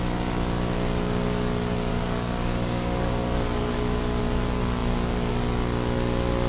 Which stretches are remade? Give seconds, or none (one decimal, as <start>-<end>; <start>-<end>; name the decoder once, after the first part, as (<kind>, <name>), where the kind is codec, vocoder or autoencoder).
1.9-4.2 (codec, DAC)